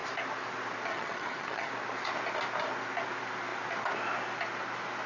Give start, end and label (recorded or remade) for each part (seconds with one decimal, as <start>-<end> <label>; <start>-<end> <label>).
0.0-0.9 recorded; 0.9-1.7 remade; 1.7-5.1 recorded